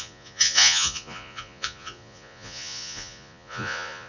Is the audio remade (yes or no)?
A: yes